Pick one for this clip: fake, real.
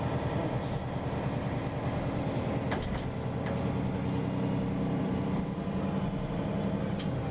real